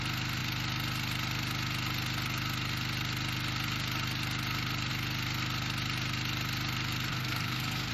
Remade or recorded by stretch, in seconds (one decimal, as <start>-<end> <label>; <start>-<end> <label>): 0.0-7.1 recorded; 7.1-7.9 remade

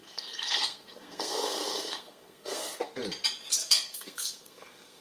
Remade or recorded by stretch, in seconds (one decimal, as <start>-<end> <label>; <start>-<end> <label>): 0.0-3.0 remade; 3.0-3.6 recorded; 3.6-5.0 remade

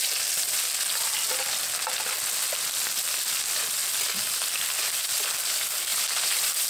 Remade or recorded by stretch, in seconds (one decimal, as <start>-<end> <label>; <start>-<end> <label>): 0.0-5.9 recorded; 5.9-6.7 remade

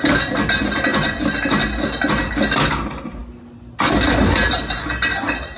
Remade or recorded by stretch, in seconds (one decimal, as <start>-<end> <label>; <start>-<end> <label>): 0.0-5.6 recorded

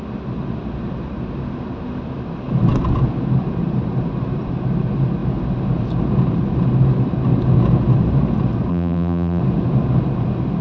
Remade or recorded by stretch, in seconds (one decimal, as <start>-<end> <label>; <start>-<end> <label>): 0.0-8.7 recorded; 8.7-9.4 remade; 9.4-10.6 recorded

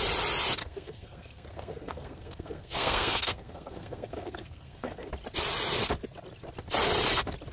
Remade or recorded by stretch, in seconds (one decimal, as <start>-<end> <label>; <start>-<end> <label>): 0.0-0.6 recorded; 0.6-5.1 remade; 5.1-7.5 recorded

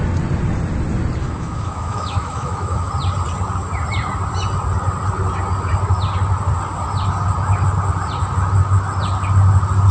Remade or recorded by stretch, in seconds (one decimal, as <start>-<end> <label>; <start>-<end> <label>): 0.0-1.2 recorded; 1.2-2.9 remade; 2.9-9.9 recorded